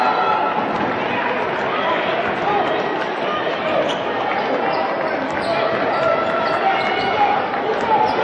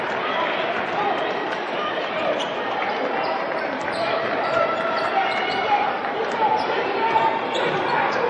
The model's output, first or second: second